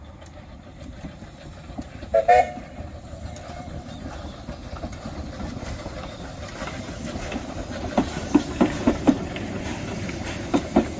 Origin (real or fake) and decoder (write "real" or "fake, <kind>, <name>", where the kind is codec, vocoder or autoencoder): fake, vocoder, BigVGAN v2